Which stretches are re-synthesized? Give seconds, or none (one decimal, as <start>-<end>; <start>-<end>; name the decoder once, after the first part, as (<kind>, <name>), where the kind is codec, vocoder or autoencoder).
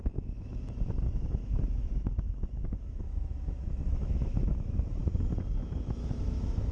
0.0-5.0 (autoencoder, DAC-VAE); 5.6-6.7